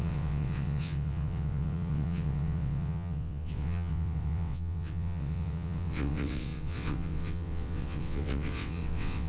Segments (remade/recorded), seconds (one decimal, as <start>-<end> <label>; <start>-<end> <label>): 0.0-9.3 remade